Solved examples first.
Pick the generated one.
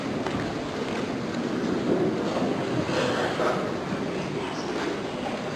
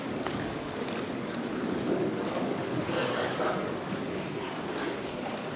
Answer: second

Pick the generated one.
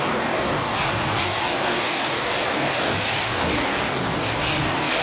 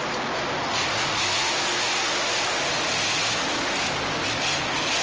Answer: first